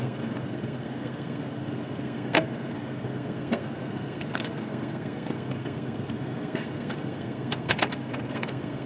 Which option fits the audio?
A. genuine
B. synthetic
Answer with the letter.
B